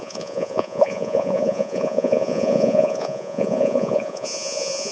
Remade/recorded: remade